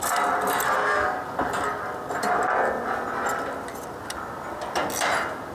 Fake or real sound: real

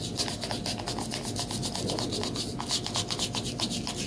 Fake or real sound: real